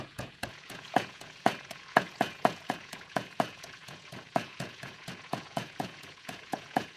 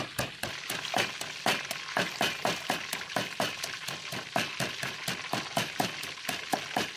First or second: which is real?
second